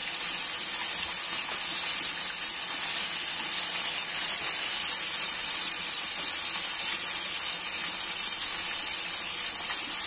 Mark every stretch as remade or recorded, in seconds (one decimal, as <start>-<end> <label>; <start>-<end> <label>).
0.0-4.9 remade; 4.9-5.4 recorded; 5.4-6.3 remade; 6.3-6.9 recorded; 6.9-8.4 remade; 8.4-10.1 recorded